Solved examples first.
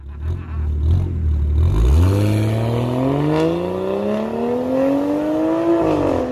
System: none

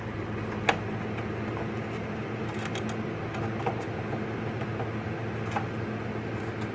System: none